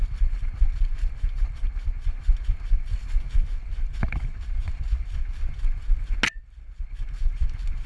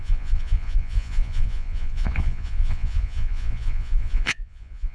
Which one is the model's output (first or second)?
second